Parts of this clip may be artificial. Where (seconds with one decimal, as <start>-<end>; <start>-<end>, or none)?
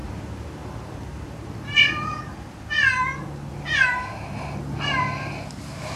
0.0-2.2